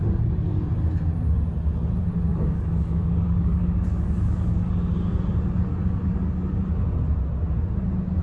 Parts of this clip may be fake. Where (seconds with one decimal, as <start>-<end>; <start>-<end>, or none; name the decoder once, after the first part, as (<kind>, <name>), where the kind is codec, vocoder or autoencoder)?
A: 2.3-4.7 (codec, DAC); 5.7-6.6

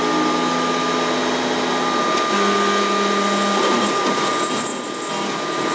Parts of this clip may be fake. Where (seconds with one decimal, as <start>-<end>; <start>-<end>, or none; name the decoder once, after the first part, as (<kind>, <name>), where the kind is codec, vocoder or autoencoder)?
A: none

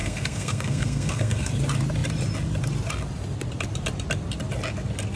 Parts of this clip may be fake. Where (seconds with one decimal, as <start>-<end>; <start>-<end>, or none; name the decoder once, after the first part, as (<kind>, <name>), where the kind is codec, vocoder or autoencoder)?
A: 0.0-1.5 (codec, SNAC)

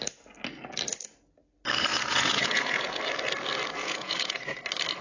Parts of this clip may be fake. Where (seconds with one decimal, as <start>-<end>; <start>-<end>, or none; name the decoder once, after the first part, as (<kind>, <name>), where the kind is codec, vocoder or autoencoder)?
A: 1.9-3.0 (vocoder, Vocos); 3.8-4.4

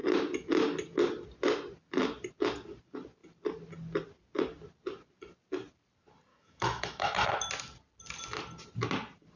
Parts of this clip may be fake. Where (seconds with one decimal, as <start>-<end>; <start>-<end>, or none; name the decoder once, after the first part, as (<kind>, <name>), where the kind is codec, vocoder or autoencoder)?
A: 6.3-7.3 (autoencoder, DAC-VAE)

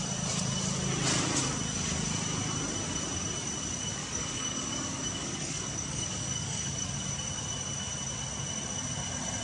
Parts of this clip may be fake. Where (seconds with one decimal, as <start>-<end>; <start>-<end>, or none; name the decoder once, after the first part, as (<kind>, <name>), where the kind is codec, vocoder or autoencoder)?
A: 4.0-6.9 (codec, DAC)